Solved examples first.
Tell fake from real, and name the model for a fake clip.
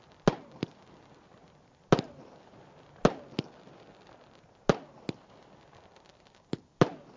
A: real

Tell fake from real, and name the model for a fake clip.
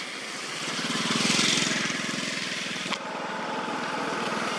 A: fake, vocoder, BigVGAN v2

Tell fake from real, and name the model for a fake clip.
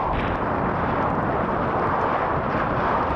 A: fake, vocoder, BigVGAN v2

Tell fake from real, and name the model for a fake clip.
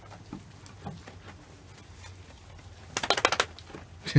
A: real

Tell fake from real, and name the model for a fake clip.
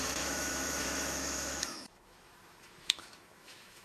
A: fake, autoencoder, DAC-VAE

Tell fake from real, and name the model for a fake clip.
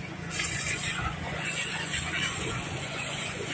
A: fake, vocoder, Vocos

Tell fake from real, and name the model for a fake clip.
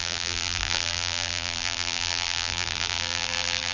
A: fake, vocoder, BigVGAN v2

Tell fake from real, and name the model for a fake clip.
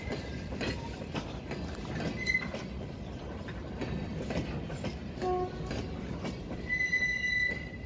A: fake, vocoder, BigVGAN v2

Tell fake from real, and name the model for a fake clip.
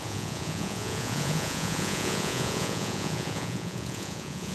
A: fake, vocoder, Vocos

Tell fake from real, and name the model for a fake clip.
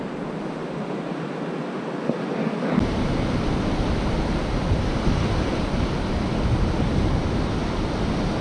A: real